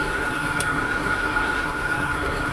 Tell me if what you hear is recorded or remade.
remade